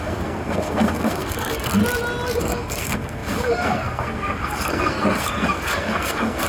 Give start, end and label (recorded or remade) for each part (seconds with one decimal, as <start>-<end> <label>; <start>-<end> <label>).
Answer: 0.0-1.8 remade; 1.8-2.4 recorded; 2.4-6.5 remade